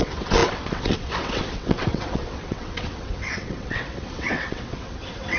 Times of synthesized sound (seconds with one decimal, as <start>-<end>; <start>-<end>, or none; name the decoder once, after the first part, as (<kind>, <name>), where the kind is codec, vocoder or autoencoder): 0.0-5.4 (vocoder, WaveNeXt)